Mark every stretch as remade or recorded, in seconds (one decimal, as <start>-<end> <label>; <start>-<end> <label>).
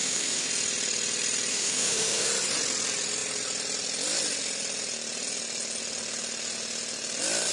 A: 0.0-0.5 remade; 0.5-1.5 recorded; 1.5-2.3 remade; 2.3-7.5 recorded